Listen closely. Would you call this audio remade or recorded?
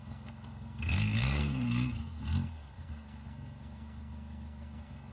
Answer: remade